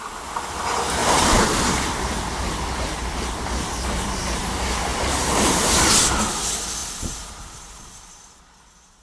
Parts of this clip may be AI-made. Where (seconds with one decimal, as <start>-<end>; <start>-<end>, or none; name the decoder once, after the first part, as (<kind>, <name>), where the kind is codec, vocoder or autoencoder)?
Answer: 1.0-1.6 (vocoder, BigVGAN v2); 4.9-5.9; 6.8-7.9